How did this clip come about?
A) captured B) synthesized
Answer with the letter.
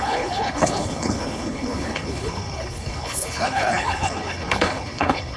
B